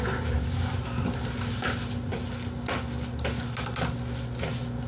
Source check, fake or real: real